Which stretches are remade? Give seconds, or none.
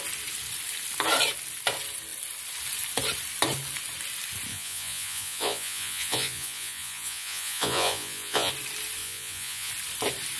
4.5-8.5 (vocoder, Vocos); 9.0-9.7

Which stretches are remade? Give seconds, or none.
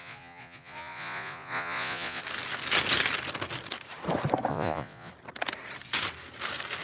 0.0-2.2 (vocoder, Vocos); 4.5-5.1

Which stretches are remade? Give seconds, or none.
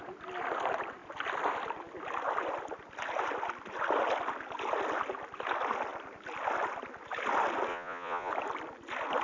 7.7-8.3 (vocoder, Vocos)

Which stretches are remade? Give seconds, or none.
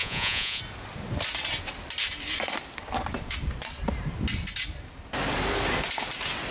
0.0-0.6 (vocoder, Vocos)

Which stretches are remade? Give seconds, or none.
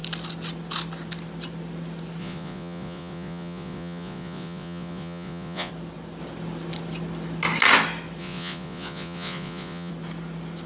2.2-5.7 (vocoder, Vocos); 8.2-9.9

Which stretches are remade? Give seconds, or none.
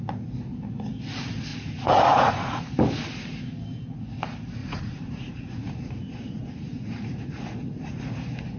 1.5-2.6 (vocoder, Vocos); 4.6-8.0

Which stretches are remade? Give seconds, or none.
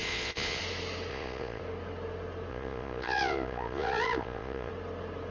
0.0-0.6 (vocoder, Vocos); 1.1-1.6; 2.5-4.7